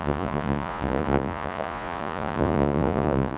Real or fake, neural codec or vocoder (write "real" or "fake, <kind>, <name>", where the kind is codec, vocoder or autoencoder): fake, vocoder, Vocos